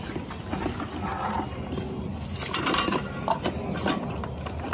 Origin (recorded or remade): recorded